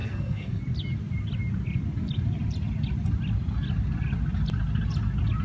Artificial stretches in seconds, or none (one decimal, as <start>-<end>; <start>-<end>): 0.0-0.6